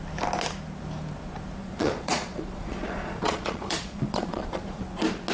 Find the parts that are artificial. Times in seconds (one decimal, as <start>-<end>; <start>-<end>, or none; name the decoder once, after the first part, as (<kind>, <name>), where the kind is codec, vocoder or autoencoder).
1.6-4.8 (vocoder, Vocos)